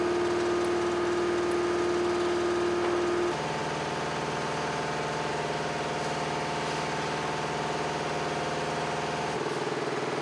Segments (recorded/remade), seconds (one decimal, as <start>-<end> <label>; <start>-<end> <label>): 0.0-10.2 recorded